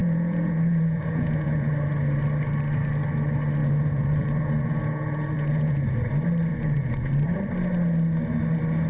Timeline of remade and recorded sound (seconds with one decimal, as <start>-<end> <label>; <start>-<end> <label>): 0.0-1.7 remade; 1.7-3.6 recorded; 3.6-6.0 remade; 6.0-6.5 recorded; 6.5-7.1 remade; 7.1-8.9 recorded